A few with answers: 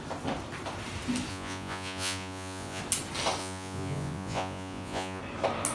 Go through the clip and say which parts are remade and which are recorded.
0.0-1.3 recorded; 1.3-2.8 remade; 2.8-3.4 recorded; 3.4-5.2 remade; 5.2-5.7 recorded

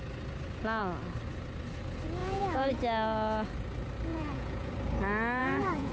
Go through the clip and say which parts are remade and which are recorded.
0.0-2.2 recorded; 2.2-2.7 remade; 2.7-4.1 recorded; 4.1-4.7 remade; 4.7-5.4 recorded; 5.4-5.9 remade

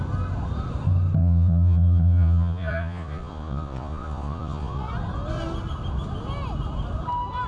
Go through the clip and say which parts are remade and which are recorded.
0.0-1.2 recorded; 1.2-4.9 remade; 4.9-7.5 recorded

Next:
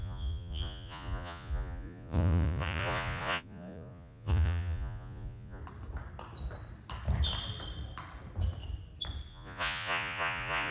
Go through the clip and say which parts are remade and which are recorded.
0.0-5.6 remade; 5.6-9.3 recorded; 9.3-10.7 remade

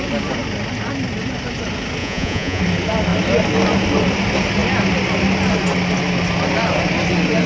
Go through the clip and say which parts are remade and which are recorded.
0.0-2.0 recorded; 2.0-2.6 remade; 2.6-7.5 recorded

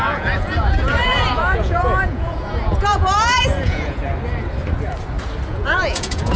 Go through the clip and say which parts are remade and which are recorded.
0.0-4.0 remade; 4.0-5.5 recorded; 5.5-6.4 remade

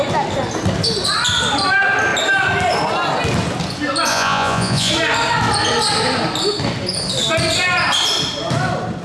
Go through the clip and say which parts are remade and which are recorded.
0.0-4.1 recorded; 4.1-4.9 remade; 4.9-9.0 recorded